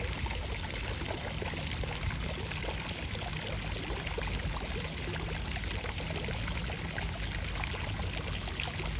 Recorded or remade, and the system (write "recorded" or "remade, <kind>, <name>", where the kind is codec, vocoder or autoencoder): recorded